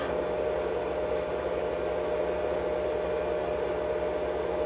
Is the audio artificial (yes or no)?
no